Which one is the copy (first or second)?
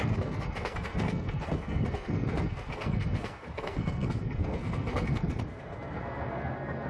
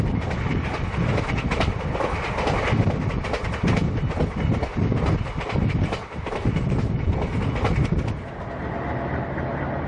first